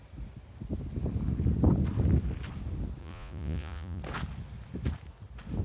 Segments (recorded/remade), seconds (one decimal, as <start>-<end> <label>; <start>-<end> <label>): 0.0-3.0 recorded; 3.0-4.0 remade; 4.0-5.6 recorded

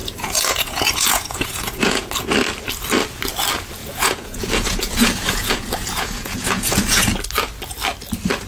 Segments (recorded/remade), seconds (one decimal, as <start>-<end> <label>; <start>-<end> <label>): 0.0-2.1 remade; 2.1-3.8 recorded; 3.8-7.1 remade; 7.1-8.5 recorded

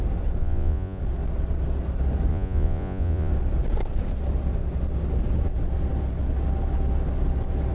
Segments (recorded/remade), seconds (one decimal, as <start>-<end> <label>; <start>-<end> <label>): 0.0-0.4 recorded; 0.4-1.0 remade; 1.0-2.3 recorded; 2.3-3.3 remade; 3.3-7.7 recorded

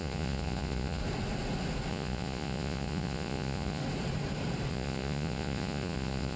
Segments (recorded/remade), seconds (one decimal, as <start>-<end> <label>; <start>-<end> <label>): 0.0-1.0 remade; 1.0-1.9 recorded; 1.9-3.8 remade; 3.8-4.7 recorded; 4.7-6.4 remade

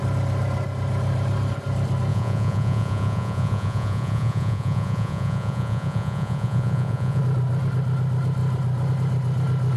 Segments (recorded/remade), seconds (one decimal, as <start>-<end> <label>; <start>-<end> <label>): 0.0-2.1 recorded; 2.1-7.2 remade; 7.2-9.8 recorded